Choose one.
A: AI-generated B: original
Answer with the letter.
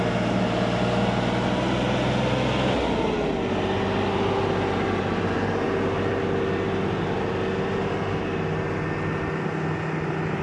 B